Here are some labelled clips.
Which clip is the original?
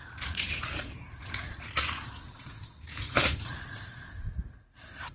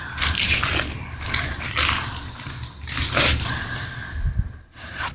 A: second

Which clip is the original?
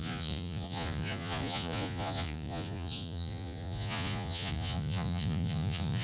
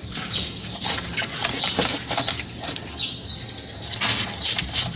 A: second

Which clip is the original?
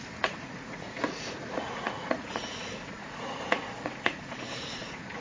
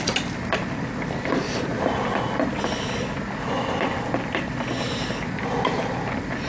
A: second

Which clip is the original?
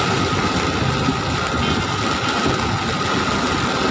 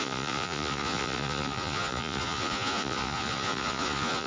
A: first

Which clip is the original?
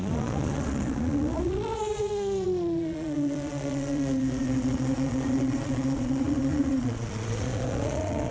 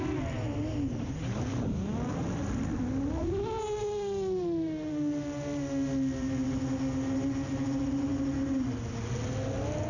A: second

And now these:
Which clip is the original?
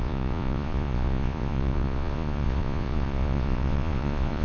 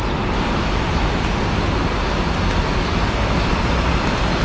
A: second